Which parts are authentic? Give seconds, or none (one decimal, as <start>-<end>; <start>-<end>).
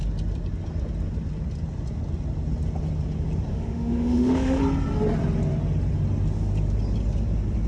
0.0-3.5; 4.6-7.7